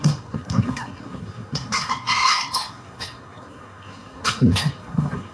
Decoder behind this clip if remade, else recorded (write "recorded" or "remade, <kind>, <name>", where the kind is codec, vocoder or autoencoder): remade, codec, SNAC